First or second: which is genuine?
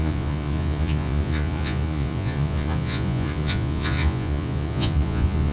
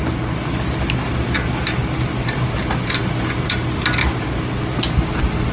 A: second